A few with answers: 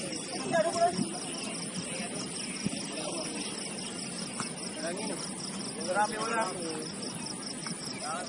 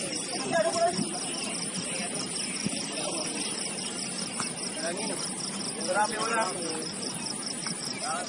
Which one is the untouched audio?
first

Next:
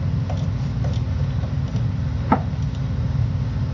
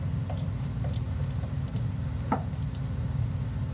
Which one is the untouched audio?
first